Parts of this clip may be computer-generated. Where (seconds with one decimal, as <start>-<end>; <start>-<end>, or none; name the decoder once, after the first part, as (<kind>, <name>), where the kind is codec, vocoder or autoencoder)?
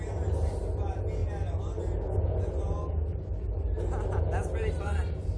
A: none